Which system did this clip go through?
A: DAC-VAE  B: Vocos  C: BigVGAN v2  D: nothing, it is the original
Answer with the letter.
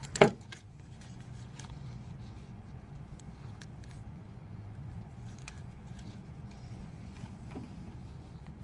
B